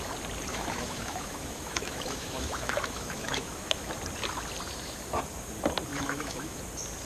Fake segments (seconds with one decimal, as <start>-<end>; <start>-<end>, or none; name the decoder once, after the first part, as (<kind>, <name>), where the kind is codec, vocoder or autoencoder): 0.5-3.9 (autoencoder, DAC-VAE); 5.9-6.6